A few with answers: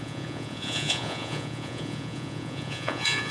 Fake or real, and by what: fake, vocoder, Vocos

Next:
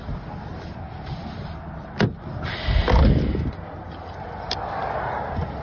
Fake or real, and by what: real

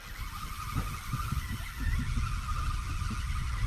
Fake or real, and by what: real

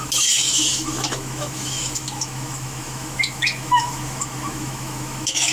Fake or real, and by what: fake, autoencoder, DAC-VAE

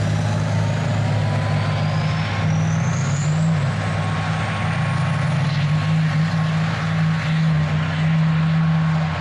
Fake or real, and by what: real